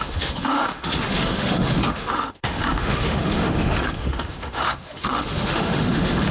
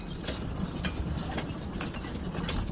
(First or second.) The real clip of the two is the second